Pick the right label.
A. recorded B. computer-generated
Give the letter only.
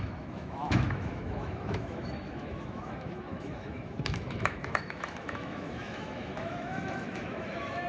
B